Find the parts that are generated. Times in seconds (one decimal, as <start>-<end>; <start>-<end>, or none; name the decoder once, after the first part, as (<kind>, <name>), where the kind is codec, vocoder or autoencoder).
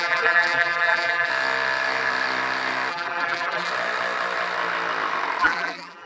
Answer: 0.0-1.3 (vocoder, BigVGAN v2); 2.9-3.7; 5.4-6.1